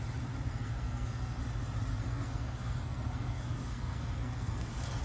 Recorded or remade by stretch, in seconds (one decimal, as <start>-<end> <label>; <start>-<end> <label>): 0.0-0.5 recorded; 0.5-1.4 remade; 1.4-1.9 recorded; 1.9-5.0 remade